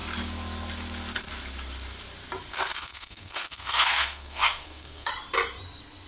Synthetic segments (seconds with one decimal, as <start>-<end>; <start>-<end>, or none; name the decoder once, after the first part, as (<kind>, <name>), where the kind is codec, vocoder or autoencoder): 2.5-5.1 (codec, SNAC)